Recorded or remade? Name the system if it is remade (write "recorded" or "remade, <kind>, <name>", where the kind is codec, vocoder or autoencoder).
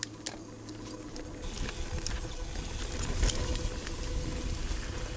recorded